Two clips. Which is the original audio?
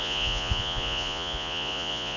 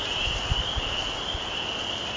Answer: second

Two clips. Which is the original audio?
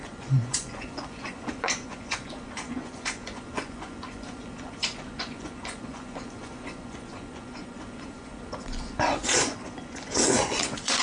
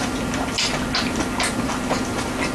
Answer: second